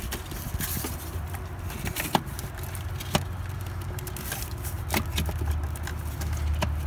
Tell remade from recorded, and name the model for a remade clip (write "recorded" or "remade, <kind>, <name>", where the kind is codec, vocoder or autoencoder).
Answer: recorded